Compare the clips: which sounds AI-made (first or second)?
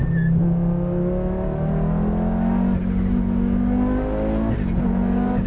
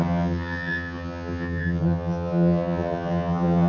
second